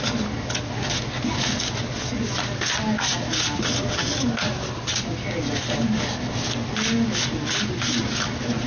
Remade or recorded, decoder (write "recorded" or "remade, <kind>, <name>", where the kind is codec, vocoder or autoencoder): recorded